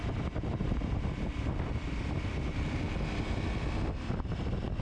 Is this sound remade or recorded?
recorded